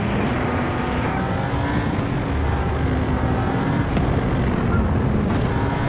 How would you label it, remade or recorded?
recorded